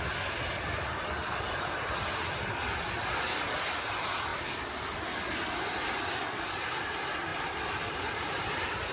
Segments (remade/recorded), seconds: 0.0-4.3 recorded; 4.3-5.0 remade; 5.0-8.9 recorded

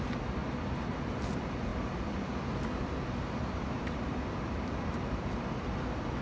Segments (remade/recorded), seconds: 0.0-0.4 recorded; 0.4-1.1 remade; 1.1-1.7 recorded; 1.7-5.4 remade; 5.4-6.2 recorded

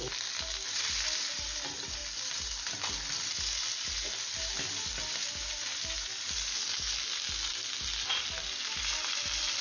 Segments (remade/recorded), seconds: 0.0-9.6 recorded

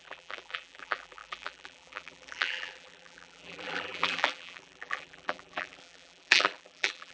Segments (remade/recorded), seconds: 0.0-7.1 remade

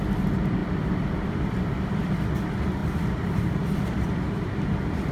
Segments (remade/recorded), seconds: 0.0-0.6 recorded; 0.6-1.4 remade; 1.4-2.8 recorded; 2.8-5.1 remade

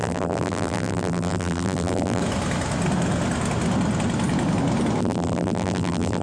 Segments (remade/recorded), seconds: 0.0-2.2 remade; 2.2-5.0 recorded; 5.0-6.2 remade